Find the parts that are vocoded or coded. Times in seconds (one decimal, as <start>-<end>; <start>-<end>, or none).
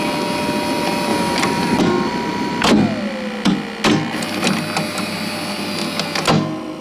none